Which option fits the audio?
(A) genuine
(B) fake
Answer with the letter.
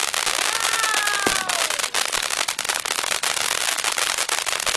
A